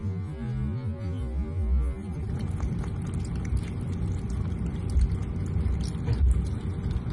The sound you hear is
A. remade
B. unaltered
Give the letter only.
B